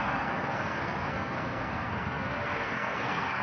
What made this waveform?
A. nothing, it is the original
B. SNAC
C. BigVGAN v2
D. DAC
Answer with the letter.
B